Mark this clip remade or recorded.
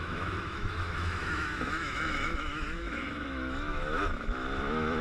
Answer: remade